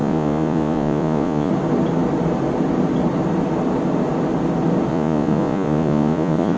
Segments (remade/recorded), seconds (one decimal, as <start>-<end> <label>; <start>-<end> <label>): 0.0-1.5 remade; 1.5-4.9 recorded; 4.9-6.6 remade